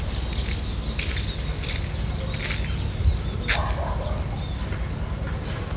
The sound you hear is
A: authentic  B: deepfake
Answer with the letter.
A